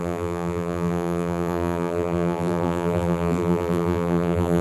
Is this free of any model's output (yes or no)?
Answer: no